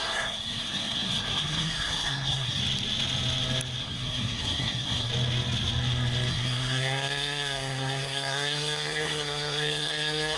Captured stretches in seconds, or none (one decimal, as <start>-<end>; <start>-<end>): 2.6-3.8; 5.1-6.3